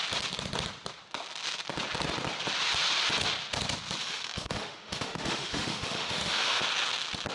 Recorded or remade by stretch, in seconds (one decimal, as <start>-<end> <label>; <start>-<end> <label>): 0.0-4.0 recorded; 4.0-6.6 remade; 6.6-7.3 recorded